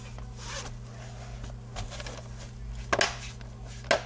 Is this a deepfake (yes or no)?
no